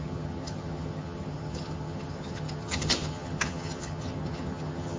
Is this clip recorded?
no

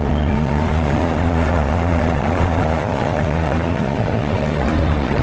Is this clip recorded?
no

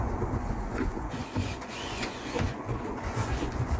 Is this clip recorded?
no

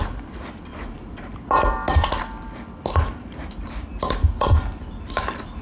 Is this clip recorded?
no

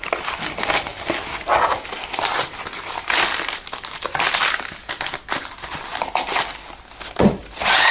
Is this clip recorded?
yes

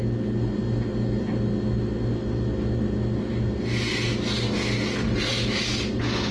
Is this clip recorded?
yes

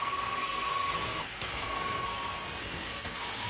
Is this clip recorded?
no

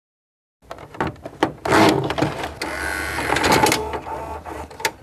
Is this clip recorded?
yes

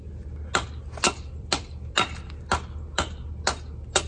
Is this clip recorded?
yes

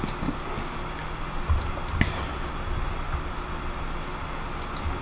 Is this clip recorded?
yes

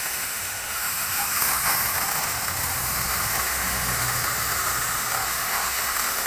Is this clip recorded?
no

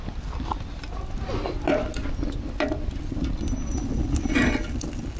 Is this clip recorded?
yes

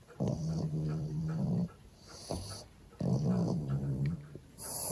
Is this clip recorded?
no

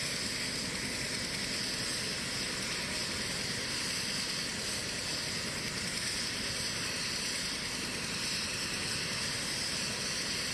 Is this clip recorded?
yes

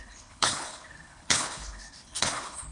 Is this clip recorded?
no